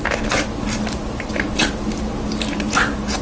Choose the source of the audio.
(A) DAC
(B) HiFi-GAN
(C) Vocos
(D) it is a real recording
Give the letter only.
D